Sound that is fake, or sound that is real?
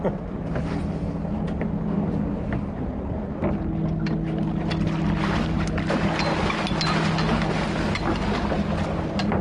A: real